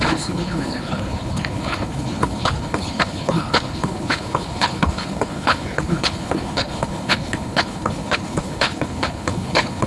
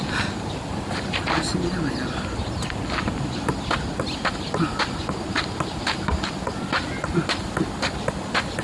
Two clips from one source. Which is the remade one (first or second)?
first